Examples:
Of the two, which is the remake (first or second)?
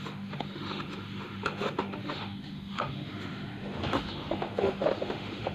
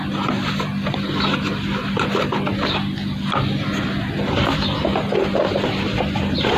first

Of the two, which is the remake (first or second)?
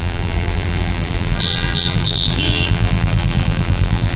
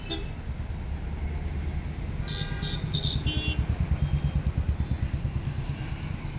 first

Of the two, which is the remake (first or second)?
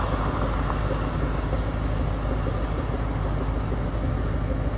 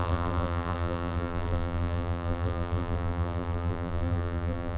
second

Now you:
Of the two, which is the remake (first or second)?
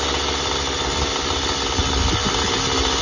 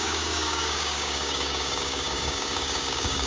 second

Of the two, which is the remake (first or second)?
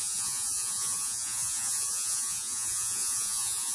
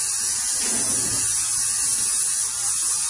first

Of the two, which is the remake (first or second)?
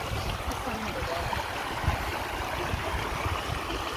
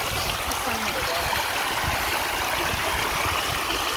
first